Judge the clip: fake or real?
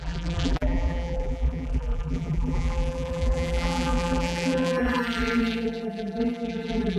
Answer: fake